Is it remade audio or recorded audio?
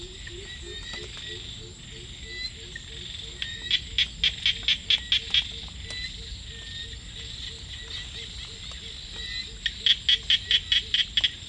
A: recorded